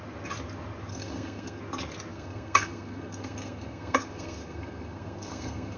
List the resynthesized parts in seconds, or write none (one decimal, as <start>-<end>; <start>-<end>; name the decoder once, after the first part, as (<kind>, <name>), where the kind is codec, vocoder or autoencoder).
0.9-1.6 (codec, SNAC); 2.1-5.8